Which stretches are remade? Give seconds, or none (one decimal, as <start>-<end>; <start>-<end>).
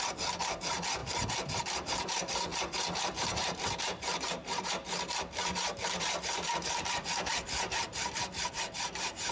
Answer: 0.0-2.5; 3.3-9.3